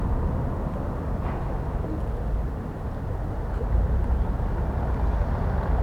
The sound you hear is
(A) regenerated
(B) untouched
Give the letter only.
B